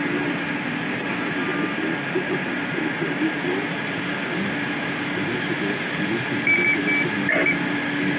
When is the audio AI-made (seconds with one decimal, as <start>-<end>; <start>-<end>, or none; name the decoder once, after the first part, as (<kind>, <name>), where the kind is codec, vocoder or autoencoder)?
none